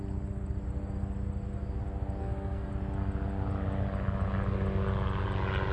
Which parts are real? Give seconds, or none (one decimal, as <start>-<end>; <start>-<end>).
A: 0.0-2.2; 2.7-5.7